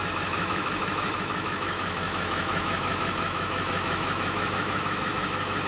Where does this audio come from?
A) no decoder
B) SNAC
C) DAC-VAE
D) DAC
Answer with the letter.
C